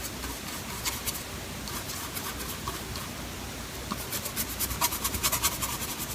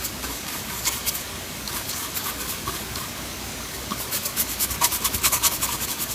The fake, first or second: second